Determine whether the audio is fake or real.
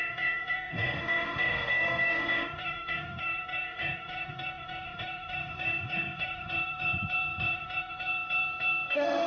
fake